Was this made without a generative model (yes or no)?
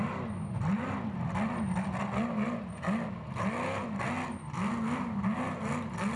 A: yes